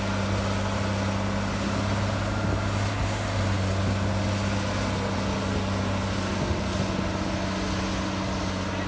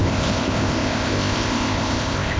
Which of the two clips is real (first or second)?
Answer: first